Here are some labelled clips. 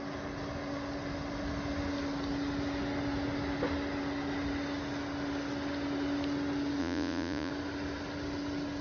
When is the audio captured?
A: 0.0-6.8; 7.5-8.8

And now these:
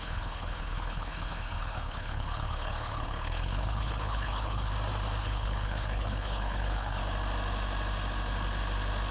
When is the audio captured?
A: 4.7-5.2; 7.0-9.1